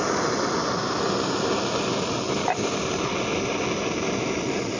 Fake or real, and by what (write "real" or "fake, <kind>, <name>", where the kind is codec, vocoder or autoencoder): real